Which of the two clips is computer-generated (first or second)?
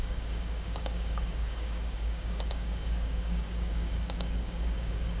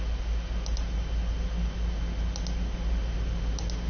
first